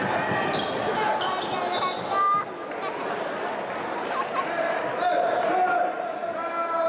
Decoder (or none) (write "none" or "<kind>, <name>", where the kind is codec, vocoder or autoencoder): none